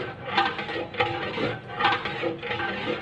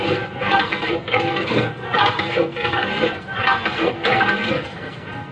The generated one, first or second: second